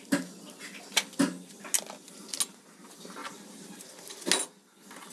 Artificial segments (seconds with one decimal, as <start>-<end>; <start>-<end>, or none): none